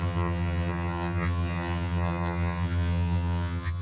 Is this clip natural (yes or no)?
no